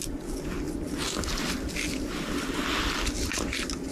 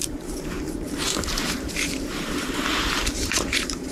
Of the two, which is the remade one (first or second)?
second